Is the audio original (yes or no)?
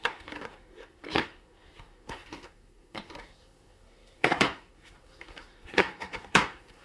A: no